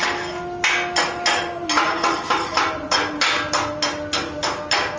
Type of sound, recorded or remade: recorded